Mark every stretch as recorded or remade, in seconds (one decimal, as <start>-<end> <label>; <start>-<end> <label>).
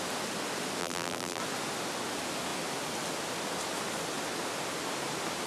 0.0-0.8 recorded; 0.8-1.4 remade; 1.4-5.5 recorded